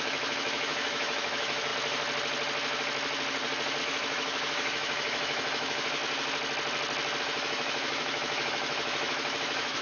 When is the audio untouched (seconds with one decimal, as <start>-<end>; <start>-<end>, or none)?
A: 1.7-3.8; 6.0-7.2